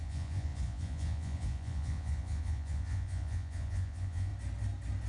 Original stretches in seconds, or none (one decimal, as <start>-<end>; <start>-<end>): 4.3-5.1

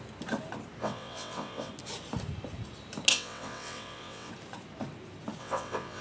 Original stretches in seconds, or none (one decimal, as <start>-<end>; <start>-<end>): 0.0-0.8; 1.7-3.1; 4.3-5.4

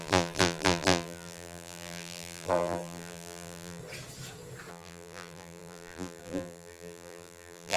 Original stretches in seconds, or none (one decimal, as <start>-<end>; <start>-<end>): 3.8-4.7

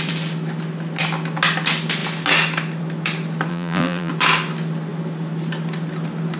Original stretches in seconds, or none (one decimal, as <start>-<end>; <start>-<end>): 0.0-3.5; 4.1-6.4

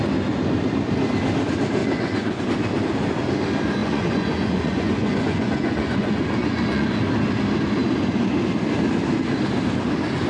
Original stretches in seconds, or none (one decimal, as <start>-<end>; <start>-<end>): 0.0-1.8; 2.4-3.8; 6.9-10.3

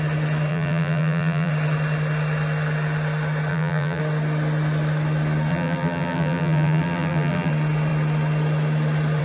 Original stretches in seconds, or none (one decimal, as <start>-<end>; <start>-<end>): 0.0-0.5; 1.5-3.5; 4.0-5.5; 7.5-9.2